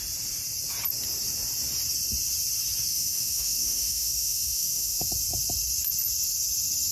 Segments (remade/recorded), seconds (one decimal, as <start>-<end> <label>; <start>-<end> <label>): 0.0-2.9 recorded; 2.9-5.1 remade; 5.1-6.9 recorded